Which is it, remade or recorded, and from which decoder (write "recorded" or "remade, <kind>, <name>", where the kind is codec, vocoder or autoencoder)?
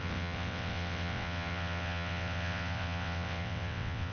remade, vocoder, WaveNeXt